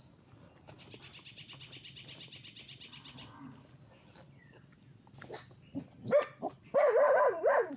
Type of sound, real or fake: real